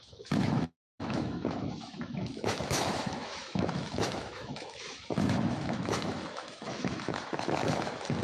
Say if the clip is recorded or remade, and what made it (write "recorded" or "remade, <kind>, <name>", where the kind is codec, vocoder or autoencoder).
remade, autoencoder, DAC-VAE